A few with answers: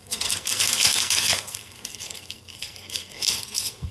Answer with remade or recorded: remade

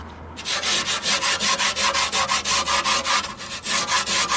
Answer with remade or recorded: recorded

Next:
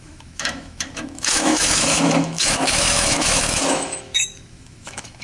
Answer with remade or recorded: remade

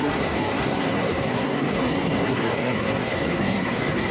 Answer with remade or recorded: remade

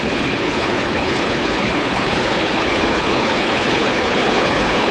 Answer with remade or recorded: remade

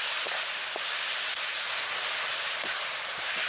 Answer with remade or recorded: recorded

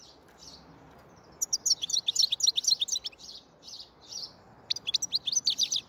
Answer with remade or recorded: recorded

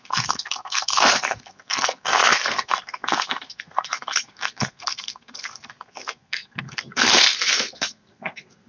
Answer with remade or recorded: remade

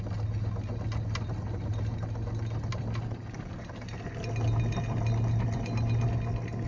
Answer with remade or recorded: recorded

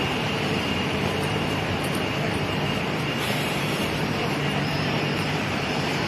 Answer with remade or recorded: remade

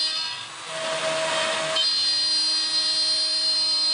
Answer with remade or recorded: recorded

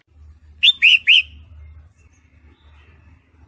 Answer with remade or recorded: recorded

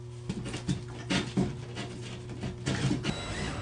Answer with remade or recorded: recorded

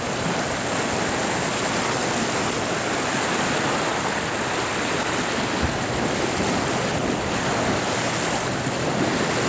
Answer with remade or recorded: recorded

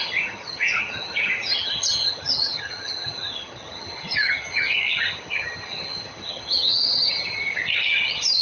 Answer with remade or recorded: remade